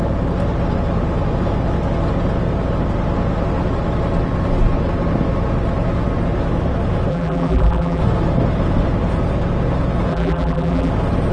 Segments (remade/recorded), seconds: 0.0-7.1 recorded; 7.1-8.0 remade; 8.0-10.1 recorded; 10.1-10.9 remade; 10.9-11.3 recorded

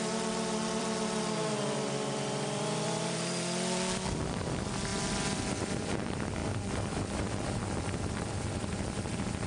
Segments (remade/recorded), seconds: 0.0-9.5 remade

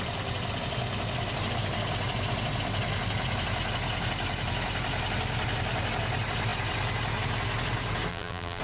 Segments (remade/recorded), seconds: 0.0-8.1 recorded; 8.1-8.6 remade

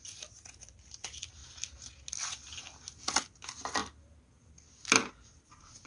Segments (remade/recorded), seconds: 0.0-1.4 recorded; 1.4-1.9 remade; 1.9-5.9 recorded

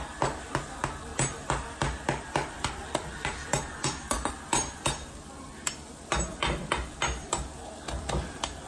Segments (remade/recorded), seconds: 0.0-1.1 recorded; 1.1-4.3 remade; 4.3-8.7 recorded

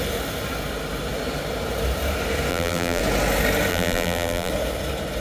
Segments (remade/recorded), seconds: 0.0-2.5 recorded; 2.5-3.0 remade; 3.0-3.7 recorded; 3.7-4.5 remade; 4.5-5.2 recorded